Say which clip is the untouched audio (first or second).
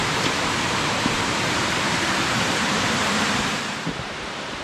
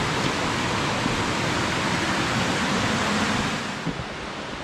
second